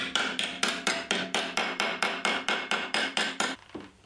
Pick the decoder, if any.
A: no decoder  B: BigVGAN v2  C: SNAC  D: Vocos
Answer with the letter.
B